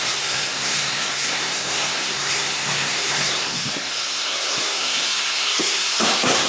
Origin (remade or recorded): remade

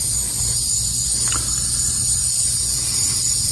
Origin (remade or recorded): recorded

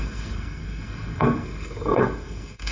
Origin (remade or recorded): remade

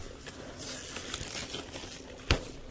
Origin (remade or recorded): recorded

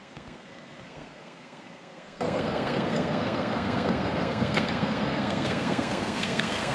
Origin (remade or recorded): remade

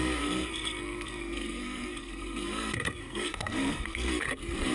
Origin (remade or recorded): remade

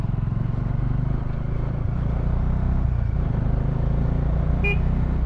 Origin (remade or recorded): recorded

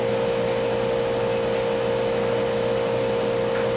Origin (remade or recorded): recorded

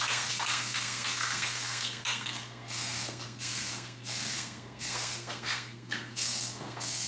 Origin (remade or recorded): remade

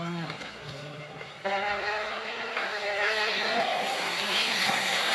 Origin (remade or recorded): remade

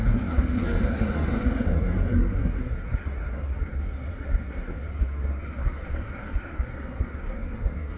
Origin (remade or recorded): remade